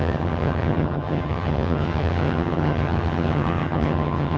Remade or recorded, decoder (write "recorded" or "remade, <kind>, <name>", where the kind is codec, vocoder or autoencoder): remade, vocoder, HiFi-GAN